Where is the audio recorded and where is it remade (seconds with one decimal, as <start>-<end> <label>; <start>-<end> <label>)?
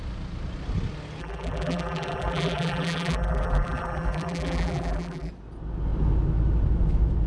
0.0-1.2 recorded; 1.2-5.3 remade; 5.3-7.3 recorded